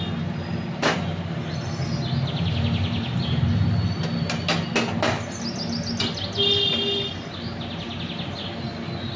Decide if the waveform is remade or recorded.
recorded